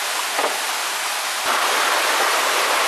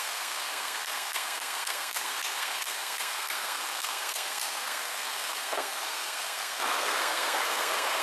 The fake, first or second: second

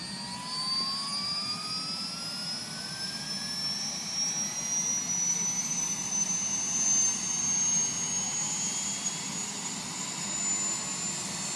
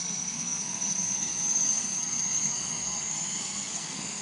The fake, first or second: second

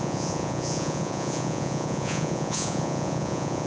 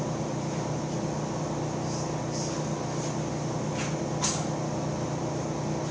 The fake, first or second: first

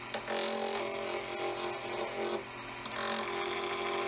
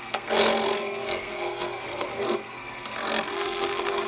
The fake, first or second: second